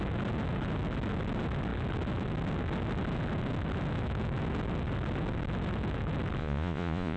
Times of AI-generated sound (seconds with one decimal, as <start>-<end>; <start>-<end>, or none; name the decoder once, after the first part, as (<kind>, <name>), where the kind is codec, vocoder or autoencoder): 6.4-7.2 (vocoder, Vocos)